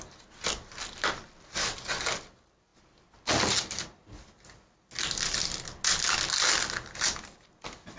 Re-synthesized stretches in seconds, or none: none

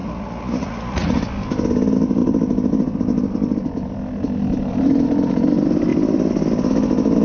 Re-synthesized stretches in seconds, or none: 0.0-1.2 (vocoder, Vocos)

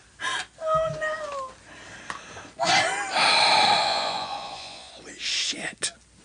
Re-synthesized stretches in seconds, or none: 3.8-4.9 (vocoder, Vocos)

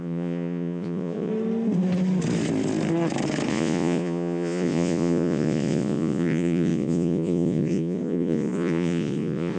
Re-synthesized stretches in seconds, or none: 0.0-1.3 (vocoder, Vocos); 3.5-9.6

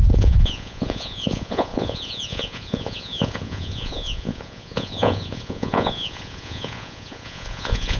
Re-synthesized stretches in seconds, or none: 0.0-8.0 (vocoder, Vocos)

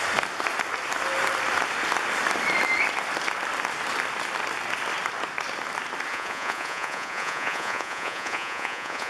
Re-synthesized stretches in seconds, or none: 6.1-9.1 (vocoder, Vocos)

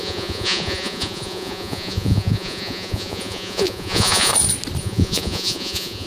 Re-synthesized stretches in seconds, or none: 0.0-4.3 (vocoder, Vocos); 4.8-6.1